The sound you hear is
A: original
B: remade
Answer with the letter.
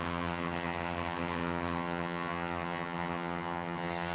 B